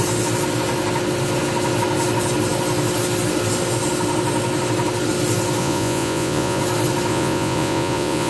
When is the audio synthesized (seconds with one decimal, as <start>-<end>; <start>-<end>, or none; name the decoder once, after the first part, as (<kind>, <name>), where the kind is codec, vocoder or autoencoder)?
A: 5.6-6.6 (vocoder, Vocos); 7.1-8.3